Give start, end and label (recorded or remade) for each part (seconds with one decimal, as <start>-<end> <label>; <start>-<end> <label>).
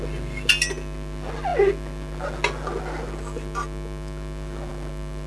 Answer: 0.0-5.3 recorded